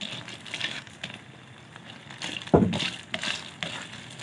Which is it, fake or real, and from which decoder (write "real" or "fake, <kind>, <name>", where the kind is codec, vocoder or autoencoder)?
real